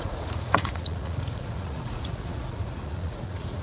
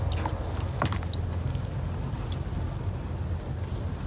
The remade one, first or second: first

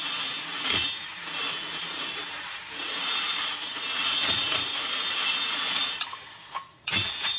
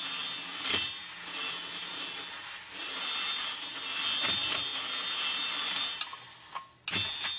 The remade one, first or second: first